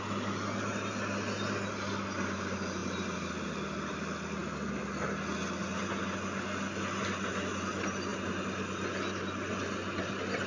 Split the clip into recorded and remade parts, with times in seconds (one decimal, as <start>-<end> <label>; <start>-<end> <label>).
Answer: 0.0-10.5 recorded